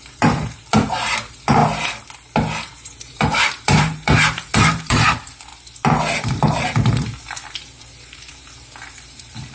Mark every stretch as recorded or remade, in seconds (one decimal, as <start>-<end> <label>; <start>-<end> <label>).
0.0-1.6 remade; 1.6-2.6 recorded; 2.6-5.5 remade; 5.5-6.4 recorded; 6.4-9.5 remade